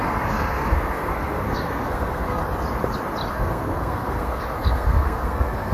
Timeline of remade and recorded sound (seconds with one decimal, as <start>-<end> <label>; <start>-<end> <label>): 0.0-2.4 remade; 2.4-3.3 recorded; 3.3-5.7 remade